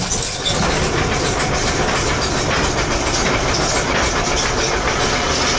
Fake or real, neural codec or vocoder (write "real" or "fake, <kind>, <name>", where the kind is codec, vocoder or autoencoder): real